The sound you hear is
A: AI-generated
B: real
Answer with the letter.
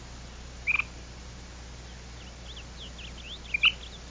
B